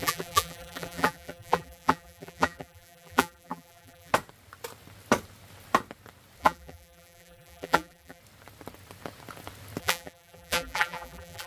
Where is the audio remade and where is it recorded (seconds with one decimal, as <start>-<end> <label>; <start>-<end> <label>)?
0.0-4.1 remade; 4.1-6.4 recorded; 6.4-8.2 remade; 8.2-9.8 recorded; 9.8-11.5 remade